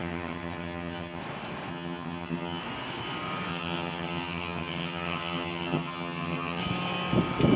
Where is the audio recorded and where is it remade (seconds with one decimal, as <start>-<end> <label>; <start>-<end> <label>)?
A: 0.0-1.2 remade; 1.2-1.7 recorded; 1.7-2.6 remade; 2.6-3.5 recorded; 3.5-6.6 remade; 6.6-7.6 recorded